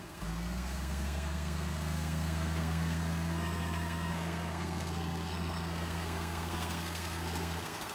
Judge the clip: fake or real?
fake